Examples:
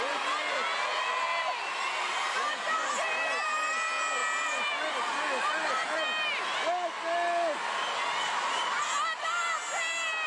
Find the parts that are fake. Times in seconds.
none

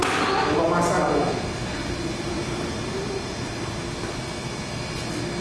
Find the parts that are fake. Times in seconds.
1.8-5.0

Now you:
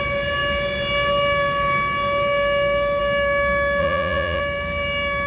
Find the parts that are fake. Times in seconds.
3.8-4.4

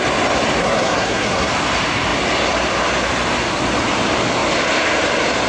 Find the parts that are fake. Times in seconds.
0.6-1.5

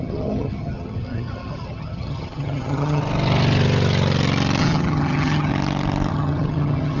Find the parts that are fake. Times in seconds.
0.0-3.0; 4.6-5.5; 6.1-7.0